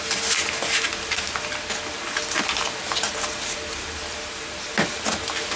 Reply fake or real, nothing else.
real